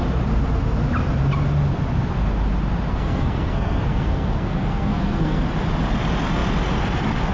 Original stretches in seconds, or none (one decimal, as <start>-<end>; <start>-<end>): 0.0-2.9; 5.4-7.3